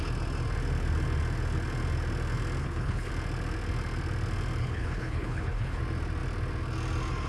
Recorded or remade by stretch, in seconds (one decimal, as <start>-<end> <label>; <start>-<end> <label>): 0.0-2.6 recorded; 2.6-3.1 remade; 3.1-4.6 recorded; 4.6-5.8 remade; 5.8-7.3 recorded